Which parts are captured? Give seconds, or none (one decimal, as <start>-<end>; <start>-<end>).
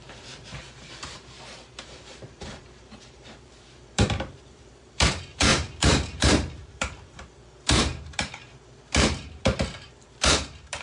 none